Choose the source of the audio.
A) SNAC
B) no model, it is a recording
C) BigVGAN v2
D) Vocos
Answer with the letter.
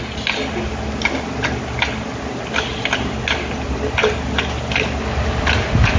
B